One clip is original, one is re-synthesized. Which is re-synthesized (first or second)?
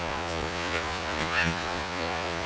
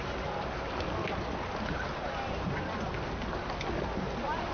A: first